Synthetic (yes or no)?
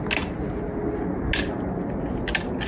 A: no